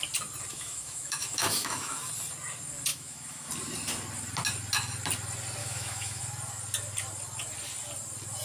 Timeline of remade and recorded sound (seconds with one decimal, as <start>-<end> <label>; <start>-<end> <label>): 0.0-0.5 recorded; 0.5-2.1 remade; 2.1-2.9 recorded; 2.9-3.5 remade; 3.5-5.6 recorded; 5.6-6.2 remade; 6.2-8.4 recorded